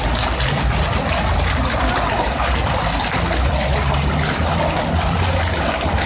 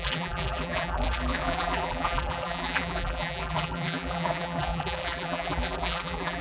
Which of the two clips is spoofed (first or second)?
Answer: second